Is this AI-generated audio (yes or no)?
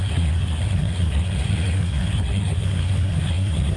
yes